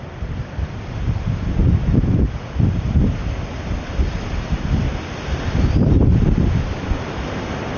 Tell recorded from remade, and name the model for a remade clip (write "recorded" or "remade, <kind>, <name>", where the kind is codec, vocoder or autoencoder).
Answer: recorded